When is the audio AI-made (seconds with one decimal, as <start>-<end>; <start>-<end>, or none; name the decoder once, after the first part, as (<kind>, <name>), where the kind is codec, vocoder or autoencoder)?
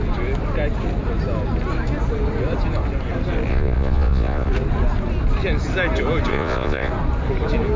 3.5-4.5 (vocoder, Vocos); 6.3-6.9